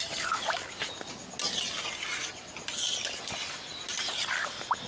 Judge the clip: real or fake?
real